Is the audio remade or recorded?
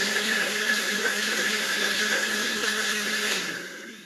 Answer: remade